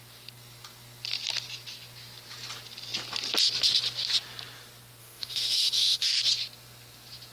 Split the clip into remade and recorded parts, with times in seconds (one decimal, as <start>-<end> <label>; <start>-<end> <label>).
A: 0.0-5.0 recorded; 5.0-6.1 remade; 6.1-7.3 recorded